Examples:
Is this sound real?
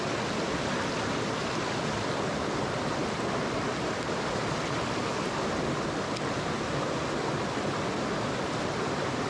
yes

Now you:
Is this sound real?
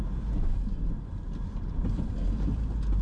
yes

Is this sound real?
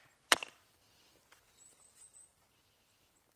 no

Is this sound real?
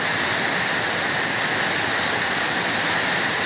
yes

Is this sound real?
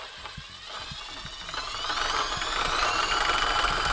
yes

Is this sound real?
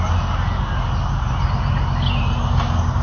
yes